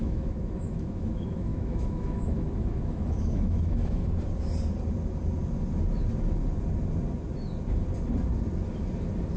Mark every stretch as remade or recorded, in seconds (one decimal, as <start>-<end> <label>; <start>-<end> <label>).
0.0-4.0 remade; 4.0-9.4 recorded